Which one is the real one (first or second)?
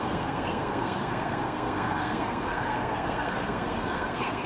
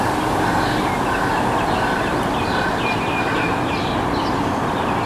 second